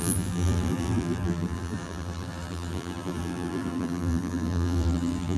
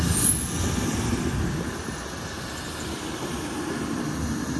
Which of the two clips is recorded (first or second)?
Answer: second